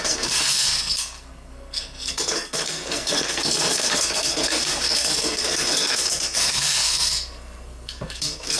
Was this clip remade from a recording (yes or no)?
yes